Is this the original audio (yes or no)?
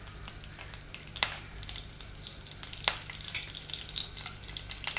yes